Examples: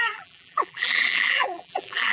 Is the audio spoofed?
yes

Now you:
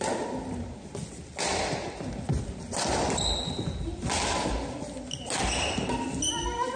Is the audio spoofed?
no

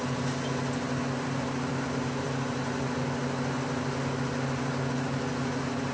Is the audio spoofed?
no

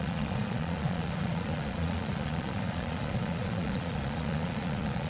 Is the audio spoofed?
yes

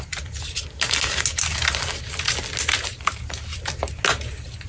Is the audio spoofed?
no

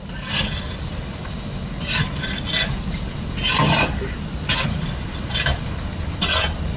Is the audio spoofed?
no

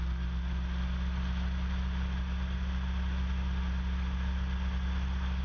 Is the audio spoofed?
no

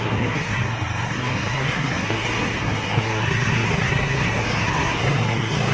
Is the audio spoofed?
yes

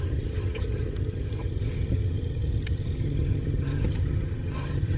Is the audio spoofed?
yes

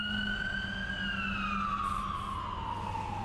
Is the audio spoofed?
no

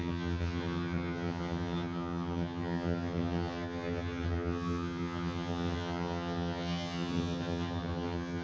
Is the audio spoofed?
yes